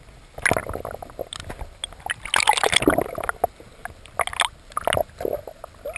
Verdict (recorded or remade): recorded